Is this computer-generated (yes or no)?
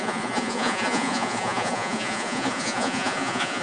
yes